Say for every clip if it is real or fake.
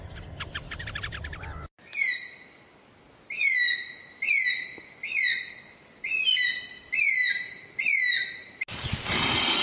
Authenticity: real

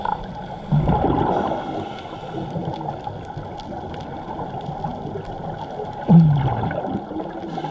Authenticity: real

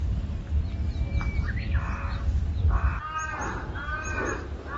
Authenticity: real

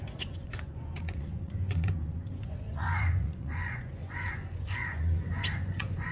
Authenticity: fake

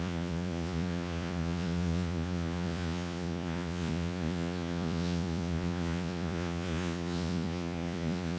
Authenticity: fake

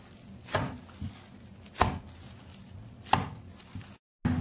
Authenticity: real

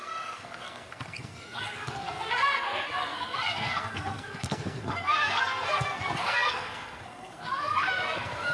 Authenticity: fake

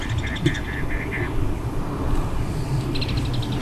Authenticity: real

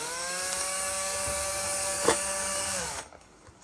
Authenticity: fake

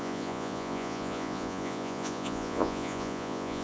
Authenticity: fake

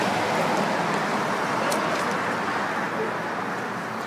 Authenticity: real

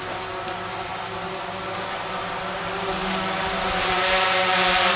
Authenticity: real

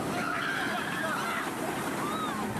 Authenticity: real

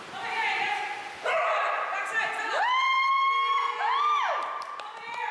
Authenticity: real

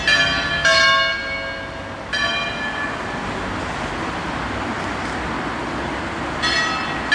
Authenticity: real